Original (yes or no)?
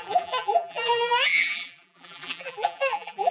no